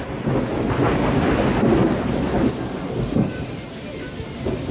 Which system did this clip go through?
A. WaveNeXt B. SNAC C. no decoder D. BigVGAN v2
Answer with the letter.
C